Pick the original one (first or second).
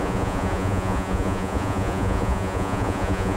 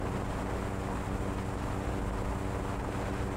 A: second